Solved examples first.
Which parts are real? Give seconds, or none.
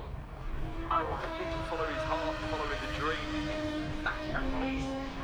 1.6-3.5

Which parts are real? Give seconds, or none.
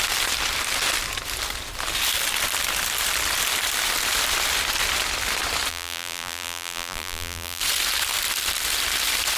0.0-5.7; 7.6-9.4